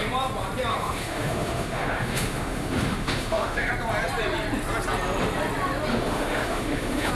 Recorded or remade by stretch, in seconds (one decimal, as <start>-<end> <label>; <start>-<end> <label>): 0.0-0.7 recorded; 0.7-3.7 remade; 3.7-5.9 recorded; 5.9-7.1 remade